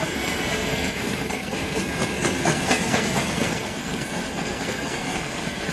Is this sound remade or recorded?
remade